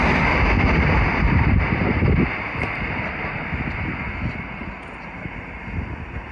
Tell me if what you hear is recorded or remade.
recorded